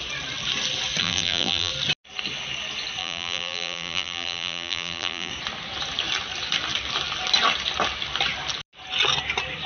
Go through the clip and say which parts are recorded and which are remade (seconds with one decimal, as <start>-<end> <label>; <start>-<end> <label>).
0.0-1.0 recorded; 1.0-1.7 remade; 1.7-3.0 recorded; 3.0-5.3 remade; 5.3-9.7 recorded